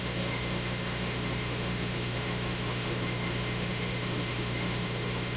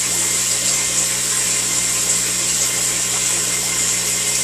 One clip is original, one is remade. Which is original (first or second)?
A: second